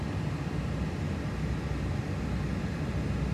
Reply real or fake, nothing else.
real